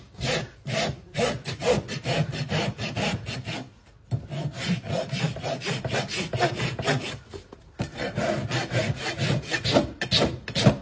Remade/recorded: recorded